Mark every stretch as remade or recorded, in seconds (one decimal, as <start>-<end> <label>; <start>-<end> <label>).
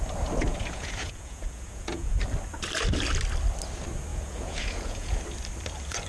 0.0-0.5 recorded; 0.5-2.2 remade; 2.2-4.1 recorded; 4.1-5.2 remade; 5.2-6.1 recorded